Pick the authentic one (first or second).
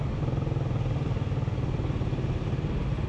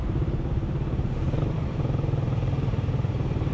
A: first